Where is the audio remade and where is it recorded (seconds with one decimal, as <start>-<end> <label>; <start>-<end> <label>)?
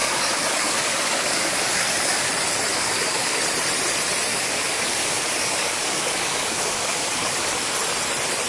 0.0-2.3 remade; 2.3-2.7 recorded; 2.7-3.4 remade; 3.4-4.3 recorded; 4.3-7.7 remade; 7.7-8.5 recorded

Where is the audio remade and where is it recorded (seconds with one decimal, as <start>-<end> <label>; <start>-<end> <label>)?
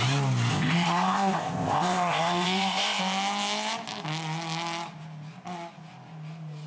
0.0-0.5 recorded; 0.5-3.0 remade; 3.0-6.7 recorded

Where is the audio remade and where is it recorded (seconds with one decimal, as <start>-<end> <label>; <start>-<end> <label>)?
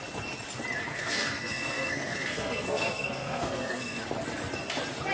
0.0-0.9 recorded; 0.9-4.0 remade; 4.0-5.1 recorded